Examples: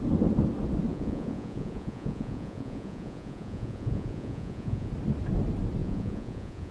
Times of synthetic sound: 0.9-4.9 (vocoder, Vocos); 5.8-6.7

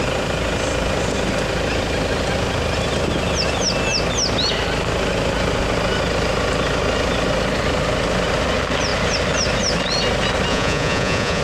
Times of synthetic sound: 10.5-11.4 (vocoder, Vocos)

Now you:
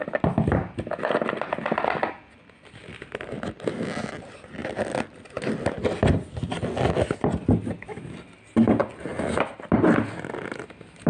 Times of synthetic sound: none